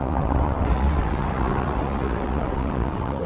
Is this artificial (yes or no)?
yes